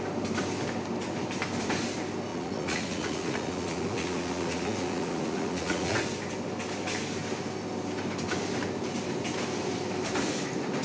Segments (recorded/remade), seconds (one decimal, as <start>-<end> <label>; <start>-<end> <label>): 0.0-2.3 recorded; 2.3-6.0 remade; 6.0-10.8 recorded